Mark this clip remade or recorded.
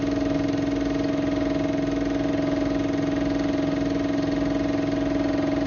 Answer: recorded